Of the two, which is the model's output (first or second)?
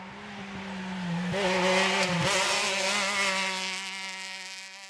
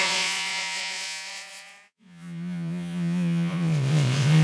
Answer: second